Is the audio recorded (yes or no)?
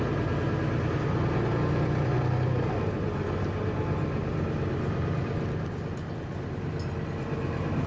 yes